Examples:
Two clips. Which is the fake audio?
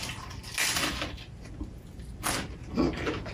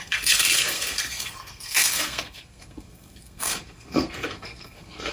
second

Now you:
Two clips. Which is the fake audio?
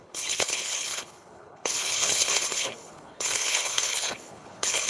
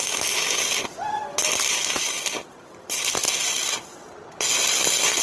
first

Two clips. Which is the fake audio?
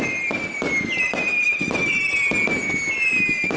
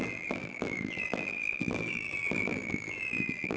second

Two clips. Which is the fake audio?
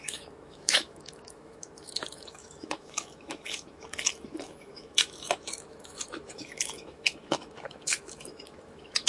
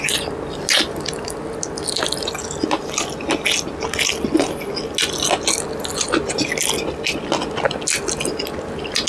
first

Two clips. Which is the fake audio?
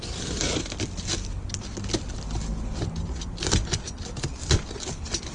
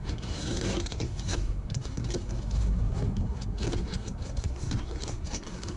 second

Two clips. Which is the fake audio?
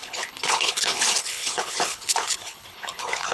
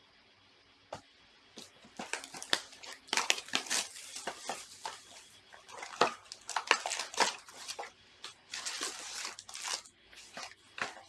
first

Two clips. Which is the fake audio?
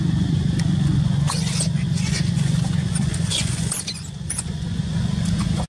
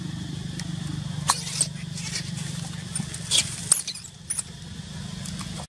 first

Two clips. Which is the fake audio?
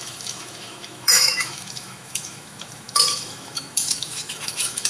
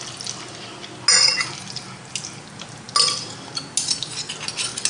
first